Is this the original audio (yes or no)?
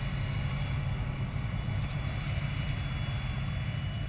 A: yes